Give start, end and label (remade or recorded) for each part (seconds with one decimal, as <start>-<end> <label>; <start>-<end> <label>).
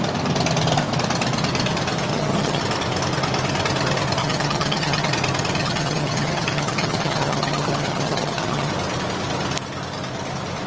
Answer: 0.0-2.1 recorded; 2.1-2.6 remade; 2.6-4.2 recorded; 4.2-5.1 remade; 5.1-5.6 recorded; 5.6-8.7 remade; 8.7-10.7 recorded